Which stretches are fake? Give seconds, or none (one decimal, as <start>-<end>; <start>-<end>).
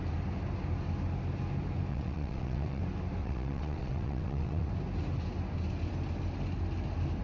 1.9-2.8; 3.2-4.7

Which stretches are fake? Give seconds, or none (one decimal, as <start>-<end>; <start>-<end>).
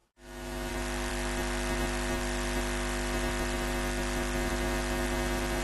0.0-0.7